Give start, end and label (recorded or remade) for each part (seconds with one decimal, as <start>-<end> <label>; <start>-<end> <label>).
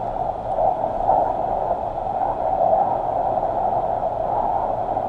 0.0-5.1 recorded